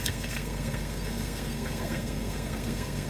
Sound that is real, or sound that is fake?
fake